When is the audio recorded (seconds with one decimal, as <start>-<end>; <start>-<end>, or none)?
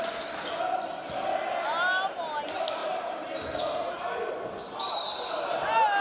0.0-2.8; 4.3-6.0